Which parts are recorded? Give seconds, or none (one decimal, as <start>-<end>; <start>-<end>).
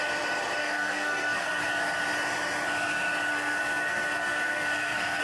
0.0-0.6; 1.6-3.3